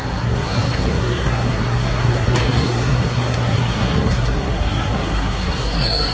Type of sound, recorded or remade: remade